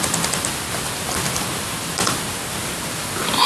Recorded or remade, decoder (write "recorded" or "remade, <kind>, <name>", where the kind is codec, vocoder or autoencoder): recorded